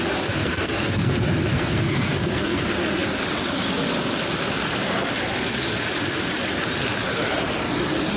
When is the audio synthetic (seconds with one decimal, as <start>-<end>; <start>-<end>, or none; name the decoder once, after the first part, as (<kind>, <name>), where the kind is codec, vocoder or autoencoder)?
0.4-1.1 (codec, SNAC); 1.5-2.6